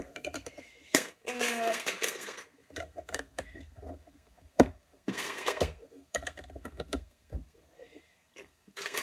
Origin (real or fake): fake